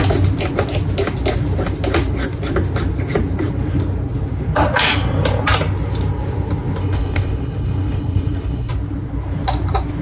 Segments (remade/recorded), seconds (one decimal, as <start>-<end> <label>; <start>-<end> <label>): 0.0-6.8 recorded; 6.8-8.7 remade; 8.7-10.0 recorded